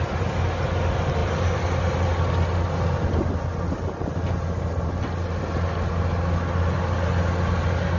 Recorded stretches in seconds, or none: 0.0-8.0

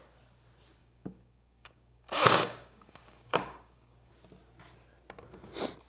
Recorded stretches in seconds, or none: 0.0-0.8; 4.1-5.9

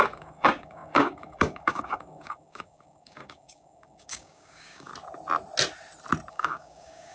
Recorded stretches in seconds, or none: 4.9-6.3